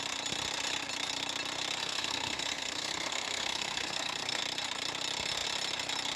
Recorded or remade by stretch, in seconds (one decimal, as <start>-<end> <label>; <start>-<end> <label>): 0.0-1.8 recorded; 1.8-4.4 remade; 4.4-6.2 recorded